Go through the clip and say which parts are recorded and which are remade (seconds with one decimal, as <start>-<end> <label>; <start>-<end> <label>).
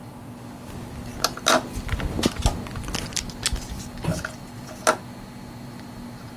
0.0-6.4 recorded